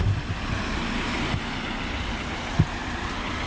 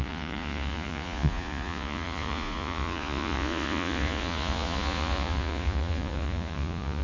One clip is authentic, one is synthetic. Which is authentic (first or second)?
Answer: first